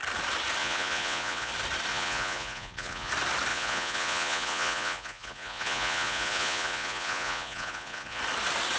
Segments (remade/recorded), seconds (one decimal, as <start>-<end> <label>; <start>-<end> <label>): 0.0-0.6 recorded; 0.6-1.5 remade; 1.5-1.9 recorded; 1.9-3.1 remade; 3.1-3.5 recorded; 3.5-8.2 remade; 8.2-8.8 recorded